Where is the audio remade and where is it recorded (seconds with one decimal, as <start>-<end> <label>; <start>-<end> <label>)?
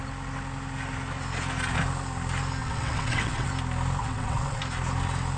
0.0-2.6 recorded; 2.6-3.5 remade; 3.5-4.0 recorded; 4.0-4.6 remade; 4.6-5.4 recorded